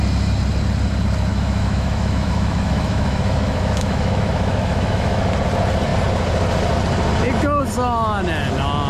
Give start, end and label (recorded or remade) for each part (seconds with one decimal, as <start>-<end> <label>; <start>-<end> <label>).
0.0-1.3 recorded; 1.3-5.3 remade; 5.3-8.9 recorded